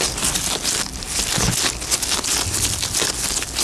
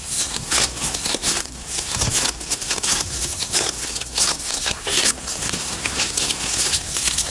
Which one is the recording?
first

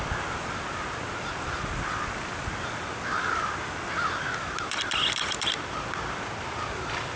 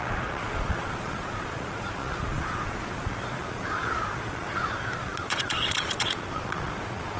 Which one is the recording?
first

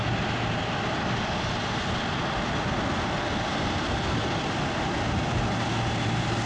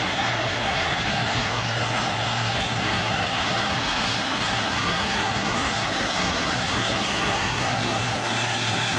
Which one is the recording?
first